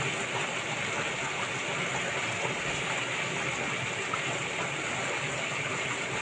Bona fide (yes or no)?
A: yes